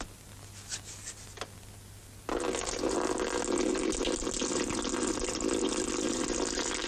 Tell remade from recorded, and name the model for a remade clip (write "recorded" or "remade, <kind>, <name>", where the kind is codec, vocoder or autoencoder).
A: recorded